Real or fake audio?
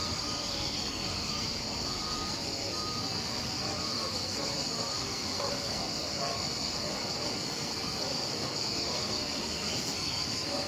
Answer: fake